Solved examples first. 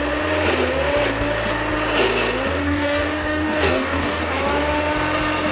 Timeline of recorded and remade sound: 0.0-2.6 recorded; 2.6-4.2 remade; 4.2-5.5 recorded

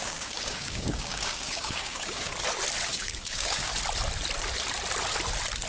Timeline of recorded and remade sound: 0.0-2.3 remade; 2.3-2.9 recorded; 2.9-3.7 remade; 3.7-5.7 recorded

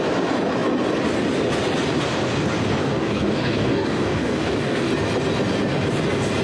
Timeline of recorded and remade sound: 0.0-2.8 recorded; 2.8-4.9 remade; 4.9-6.4 recorded